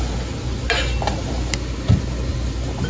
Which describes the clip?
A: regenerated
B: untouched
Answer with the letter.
B